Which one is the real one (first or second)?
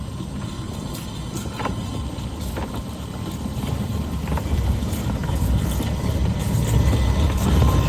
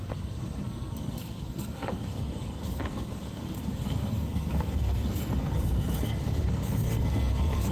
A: first